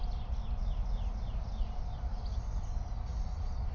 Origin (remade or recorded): recorded